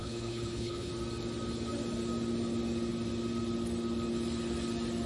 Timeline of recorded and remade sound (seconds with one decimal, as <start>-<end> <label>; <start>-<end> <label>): 0.0-0.9 remade; 0.9-5.1 recorded